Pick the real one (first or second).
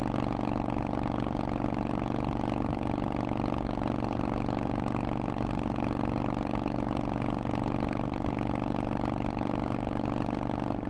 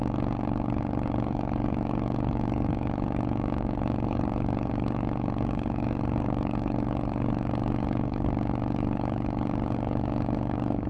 first